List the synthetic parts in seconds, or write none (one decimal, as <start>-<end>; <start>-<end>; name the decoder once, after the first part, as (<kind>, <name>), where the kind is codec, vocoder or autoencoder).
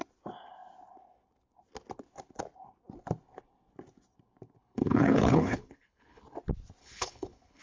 4.6-6.2 (codec, HILCodec); 6.8-7.6